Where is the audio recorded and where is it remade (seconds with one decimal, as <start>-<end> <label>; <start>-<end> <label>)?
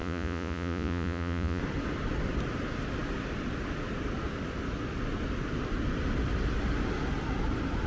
0.0-1.6 remade; 1.6-7.9 recorded